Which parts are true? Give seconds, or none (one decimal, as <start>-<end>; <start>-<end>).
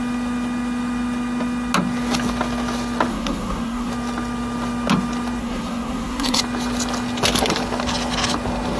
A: 0.0-3.1; 3.9-5.4; 6.4-8.8